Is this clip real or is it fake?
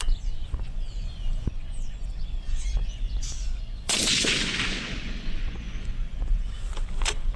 fake